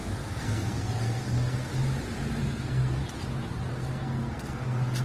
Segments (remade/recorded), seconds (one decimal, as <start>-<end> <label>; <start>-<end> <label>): 0.0-1.7 remade; 1.7-2.4 recorded; 2.4-3.0 remade; 3.0-3.7 recorded; 3.7-5.0 remade